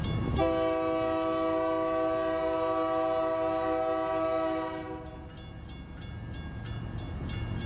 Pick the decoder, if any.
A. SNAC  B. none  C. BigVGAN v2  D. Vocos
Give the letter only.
B